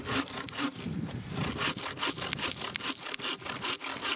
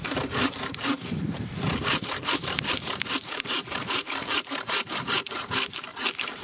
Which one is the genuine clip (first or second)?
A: first